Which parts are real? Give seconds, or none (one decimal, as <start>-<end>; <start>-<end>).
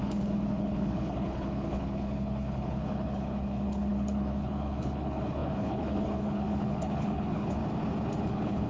7.6-8.2